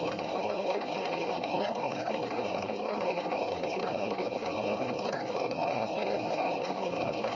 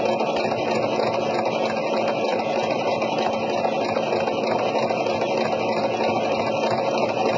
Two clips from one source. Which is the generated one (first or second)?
first